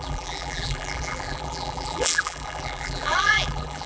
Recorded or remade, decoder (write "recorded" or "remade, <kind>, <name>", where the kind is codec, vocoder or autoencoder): remade, vocoder, BigVGAN v2